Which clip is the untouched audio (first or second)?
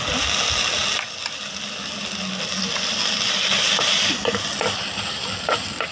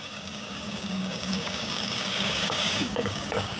first